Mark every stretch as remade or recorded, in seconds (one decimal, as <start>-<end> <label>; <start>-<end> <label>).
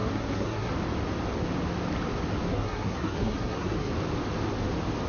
0.0-0.7 remade; 0.7-2.5 recorded; 2.5-3.9 remade; 3.9-5.1 recorded